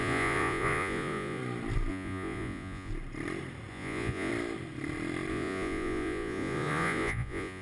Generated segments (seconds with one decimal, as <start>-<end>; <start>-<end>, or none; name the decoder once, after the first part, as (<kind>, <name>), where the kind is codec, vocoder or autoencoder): 0.0-1.4 (vocoder, Vocos); 1.9-2.9; 3.7-4.3; 5.3-7.6